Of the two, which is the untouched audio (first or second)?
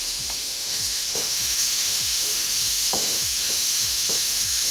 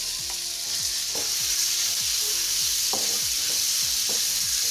second